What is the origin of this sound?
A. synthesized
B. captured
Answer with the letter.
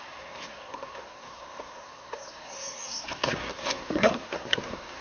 A